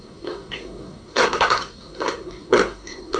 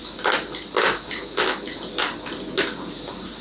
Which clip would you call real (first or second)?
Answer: second